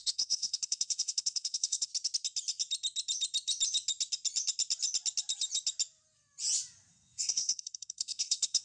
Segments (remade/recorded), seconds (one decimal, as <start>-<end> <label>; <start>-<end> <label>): 0.0-1.9 remade; 1.9-6.9 recorded; 6.9-8.6 remade